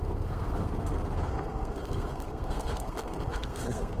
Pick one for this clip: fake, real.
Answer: fake